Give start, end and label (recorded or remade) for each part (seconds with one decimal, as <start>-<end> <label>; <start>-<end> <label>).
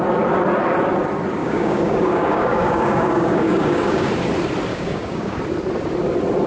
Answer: 0.0-1.4 recorded; 1.4-4.1 remade; 4.1-4.7 recorded; 4.7-5.4 remade; 5.4-6.5 recorded